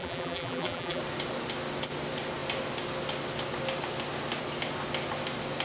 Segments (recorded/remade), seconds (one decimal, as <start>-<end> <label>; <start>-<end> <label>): 0.0-1.0 remade; 1.0-5.6 recorded

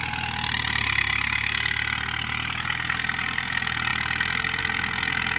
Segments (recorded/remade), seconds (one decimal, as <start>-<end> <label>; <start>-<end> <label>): 0.0-5.4 recorded

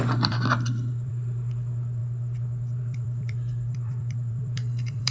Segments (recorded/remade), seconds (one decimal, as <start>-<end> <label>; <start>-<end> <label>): 0.0-2.0 remade; 2.0-2.8 recorded; 2.8-5.1 remade

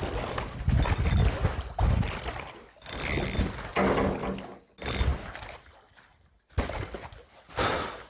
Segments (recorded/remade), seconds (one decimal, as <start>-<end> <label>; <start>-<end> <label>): 0.0-1.2 recorded; 1.2-3.6 remade; 3.6-8.1 recorded

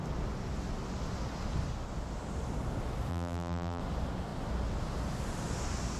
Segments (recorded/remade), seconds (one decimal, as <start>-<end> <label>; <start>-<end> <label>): 0.0-3.1 recorded; 3.1-3.8 remade; 3.8-6.0 recorded

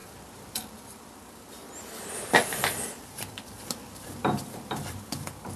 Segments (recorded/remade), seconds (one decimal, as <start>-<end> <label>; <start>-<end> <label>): 0.0-5.6 remade

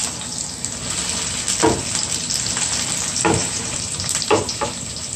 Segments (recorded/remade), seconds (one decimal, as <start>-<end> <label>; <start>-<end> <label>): 0.0-3.4 recorded; 3.4-4.7 remade; 4.7-5.2 recorded